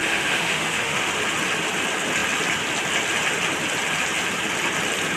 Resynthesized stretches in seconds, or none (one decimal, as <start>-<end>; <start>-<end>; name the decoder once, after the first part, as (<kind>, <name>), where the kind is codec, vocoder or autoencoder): 0.0-1.1 (autoencoder, DAC-VAE)